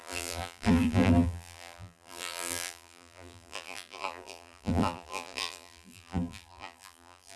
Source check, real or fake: fake